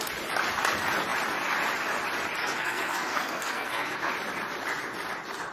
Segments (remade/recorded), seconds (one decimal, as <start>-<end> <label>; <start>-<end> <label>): 0.0-2.4 recorded; 2.4-4.1 remade; 4.1-5.5 recorded